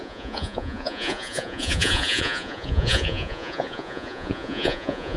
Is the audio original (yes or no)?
no